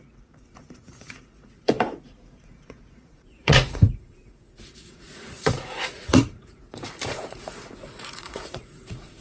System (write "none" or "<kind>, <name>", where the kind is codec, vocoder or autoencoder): vocoder, Vocos